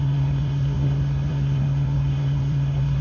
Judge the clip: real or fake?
fake